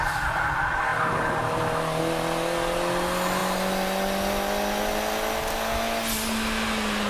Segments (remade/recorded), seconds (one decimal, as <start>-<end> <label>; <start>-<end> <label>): 0.0-7.1 recorded